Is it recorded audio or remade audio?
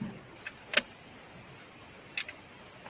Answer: recorded